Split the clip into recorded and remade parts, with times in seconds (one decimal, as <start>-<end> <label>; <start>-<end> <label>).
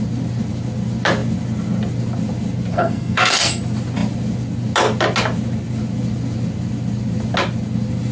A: 0.0-2.7 recorded; 2.7-3.6 remade; 3.6-8.1 recorded